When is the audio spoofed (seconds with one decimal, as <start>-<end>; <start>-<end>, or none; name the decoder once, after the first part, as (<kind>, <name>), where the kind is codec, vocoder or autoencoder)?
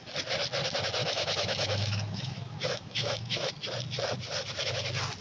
1.0-3.5 (autoencoder, DAC-VAE)